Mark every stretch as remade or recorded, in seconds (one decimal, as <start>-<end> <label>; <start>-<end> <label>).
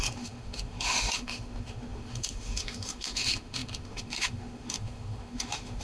0.0-5.8 remade